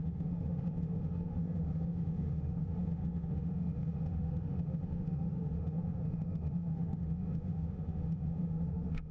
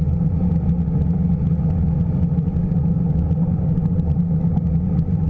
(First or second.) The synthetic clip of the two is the first